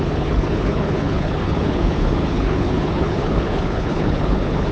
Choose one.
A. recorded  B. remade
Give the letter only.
B